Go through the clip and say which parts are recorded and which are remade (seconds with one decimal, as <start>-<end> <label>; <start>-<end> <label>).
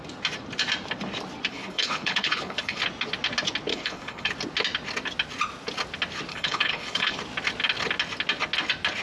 0.0-1.5 recorded; 1.5-2.8 remade; 2.8-3.7 recorded; 3.7-4.3 remade; 4.3-6.3 recorded; 6.3-7.2 remade; 7.2-9.0 recorded